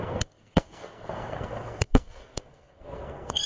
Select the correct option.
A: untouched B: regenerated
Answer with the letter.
B